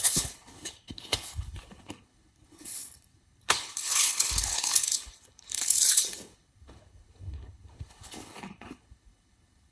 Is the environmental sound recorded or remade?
remade